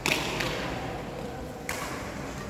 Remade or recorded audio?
recorded